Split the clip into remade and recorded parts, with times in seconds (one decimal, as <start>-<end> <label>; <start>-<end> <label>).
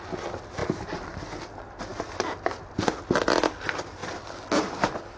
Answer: 0.0-0.6 recorded; 0.6-1.2 remade; 1.2-1.9 recorded; 1.9-3.1 remade; 3.1-4.0 recorded; 4.0-5.2 remade